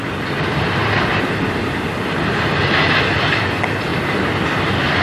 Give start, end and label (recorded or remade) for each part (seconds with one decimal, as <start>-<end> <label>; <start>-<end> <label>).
0.0-5.0 recorded